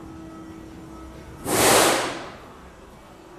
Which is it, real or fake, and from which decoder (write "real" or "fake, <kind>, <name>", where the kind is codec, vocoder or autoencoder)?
real